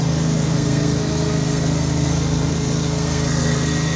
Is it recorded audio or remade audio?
remade